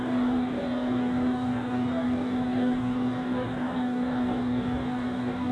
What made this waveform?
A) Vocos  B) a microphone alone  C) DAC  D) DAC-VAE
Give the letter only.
C